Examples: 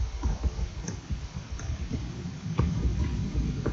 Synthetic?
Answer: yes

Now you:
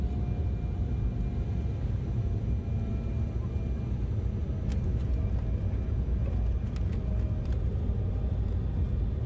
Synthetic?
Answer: no